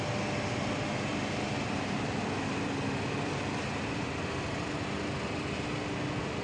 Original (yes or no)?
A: yes